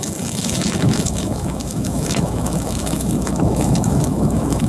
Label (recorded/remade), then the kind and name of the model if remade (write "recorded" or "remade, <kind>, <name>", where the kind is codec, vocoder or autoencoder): remade, autoencoder, DAC-VAE